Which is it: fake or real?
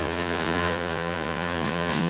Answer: fake